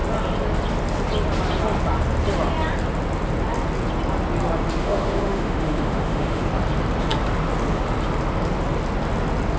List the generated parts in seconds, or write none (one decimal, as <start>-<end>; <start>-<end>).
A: 4.8-6.4